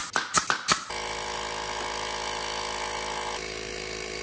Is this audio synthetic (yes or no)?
no